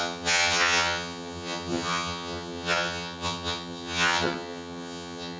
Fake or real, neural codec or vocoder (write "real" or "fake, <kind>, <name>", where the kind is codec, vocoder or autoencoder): fake, vocoder, HiFi-GAN